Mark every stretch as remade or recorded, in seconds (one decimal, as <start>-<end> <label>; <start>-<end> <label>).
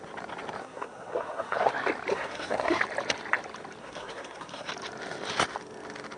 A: 0.0-0.6 recorded; 0.6-1.7 remade; 1.7-2.1 recorded; 2.1-2.8 remade; 2.8-3.8 recorded; 3.8-4.7 remade; 4.7-6.2 recorded